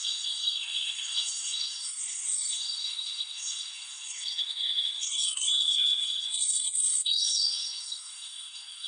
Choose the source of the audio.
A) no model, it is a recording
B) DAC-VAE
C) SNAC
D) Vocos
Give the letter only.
C